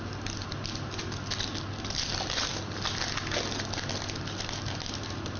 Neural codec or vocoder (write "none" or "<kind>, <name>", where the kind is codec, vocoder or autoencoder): none